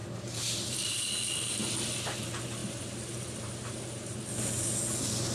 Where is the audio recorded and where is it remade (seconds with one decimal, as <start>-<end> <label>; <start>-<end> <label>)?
0.0-0.9 remade; 0.9-2.6 recorded; 2.6-4.3 remade; 4.3-5.3 recorded